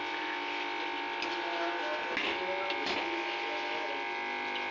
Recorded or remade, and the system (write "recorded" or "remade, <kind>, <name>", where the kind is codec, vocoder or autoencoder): recorded